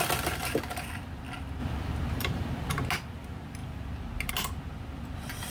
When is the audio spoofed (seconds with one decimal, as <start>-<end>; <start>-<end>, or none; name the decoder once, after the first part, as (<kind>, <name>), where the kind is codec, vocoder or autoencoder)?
none